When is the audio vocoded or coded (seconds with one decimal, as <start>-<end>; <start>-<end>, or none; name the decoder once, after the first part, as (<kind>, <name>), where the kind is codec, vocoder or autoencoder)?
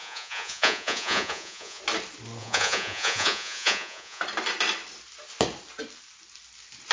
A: 0.0-1.8 (vocoder, Vocos); 2.4-4.2